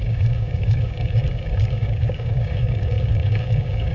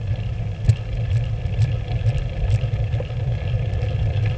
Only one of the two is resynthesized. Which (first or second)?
first